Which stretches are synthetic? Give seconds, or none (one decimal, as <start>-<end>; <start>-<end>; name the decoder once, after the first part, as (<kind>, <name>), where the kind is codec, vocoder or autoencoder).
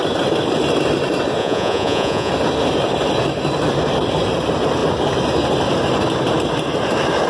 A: 1.4-2.3 (vocoder, Vocos)